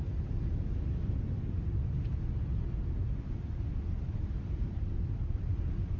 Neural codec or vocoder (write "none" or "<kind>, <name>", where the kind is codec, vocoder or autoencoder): none